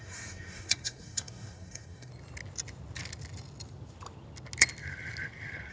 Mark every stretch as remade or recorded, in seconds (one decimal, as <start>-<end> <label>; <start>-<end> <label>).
0.0-2.1 remade; 2.1-5.7 recorded